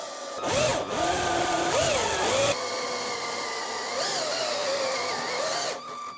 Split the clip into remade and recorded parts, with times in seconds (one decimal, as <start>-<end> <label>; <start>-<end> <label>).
0.0-6.2 recorded

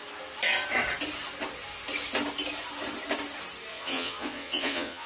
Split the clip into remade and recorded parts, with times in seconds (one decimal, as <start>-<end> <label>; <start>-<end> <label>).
0.0-3.7 recorded; 3.7-5.1 remade

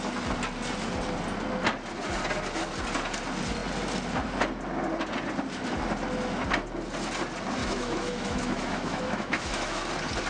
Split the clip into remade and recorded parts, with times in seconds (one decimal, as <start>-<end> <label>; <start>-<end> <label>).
0.0-7.6 recorded; 7.6-9.8 remade; 9.8-10.3 recorded

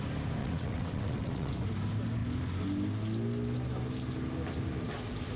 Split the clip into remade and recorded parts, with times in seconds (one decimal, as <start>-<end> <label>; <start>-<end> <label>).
0.0-0.4 recorded; 0.4-1.5 remade; 1.5-5.4 recorded